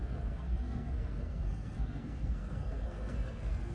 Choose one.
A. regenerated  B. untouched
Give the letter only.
A